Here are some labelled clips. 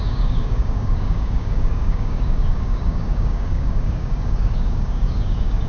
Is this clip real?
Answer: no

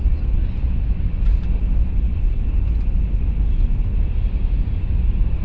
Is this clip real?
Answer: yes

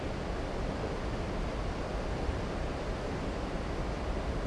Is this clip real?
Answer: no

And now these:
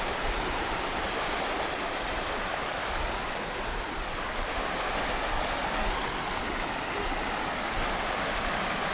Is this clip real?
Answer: yes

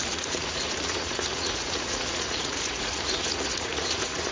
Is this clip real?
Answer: no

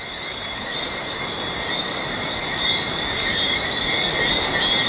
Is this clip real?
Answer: yes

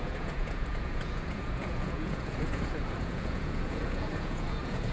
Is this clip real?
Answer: no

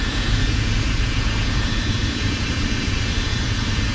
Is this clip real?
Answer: no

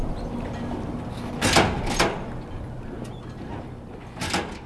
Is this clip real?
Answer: yes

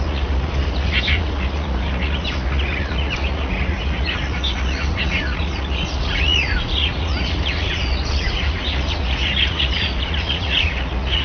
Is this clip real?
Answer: no